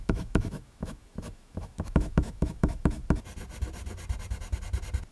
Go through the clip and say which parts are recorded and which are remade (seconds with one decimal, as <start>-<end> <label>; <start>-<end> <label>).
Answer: 0.0-3.0 remade; 3.0-5.1 recorded